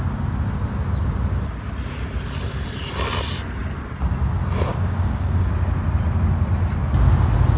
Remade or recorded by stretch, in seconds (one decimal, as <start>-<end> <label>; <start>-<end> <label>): 0.0-4.7 recorded; 4.7-5.5 remade; 5.5-7.6 recorded

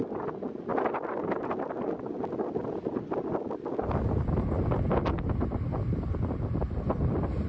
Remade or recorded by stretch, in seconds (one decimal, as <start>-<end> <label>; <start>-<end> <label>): 0.0-7.5 recorded

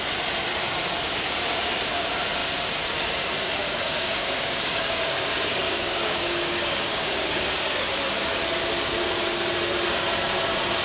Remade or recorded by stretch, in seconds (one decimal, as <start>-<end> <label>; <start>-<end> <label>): 0.0-3.6 recorded; 3.6-7.9 remade; 7.9-10.8 recorded

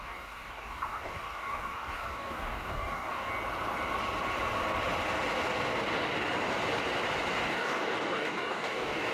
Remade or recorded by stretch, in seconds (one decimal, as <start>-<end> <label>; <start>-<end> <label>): 0.0-3.3 remade; 3.3-7.3 recorded; 7.3-9.1 remade